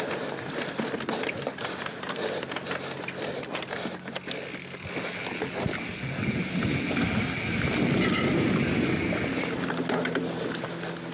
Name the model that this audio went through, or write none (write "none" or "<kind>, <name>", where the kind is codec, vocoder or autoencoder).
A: none